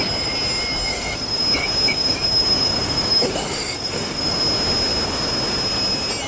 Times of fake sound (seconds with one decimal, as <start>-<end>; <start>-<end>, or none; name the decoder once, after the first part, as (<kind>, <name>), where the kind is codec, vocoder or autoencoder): 0.9-4.4 (codec, DAC)